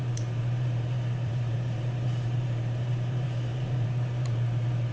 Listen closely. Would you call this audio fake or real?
fake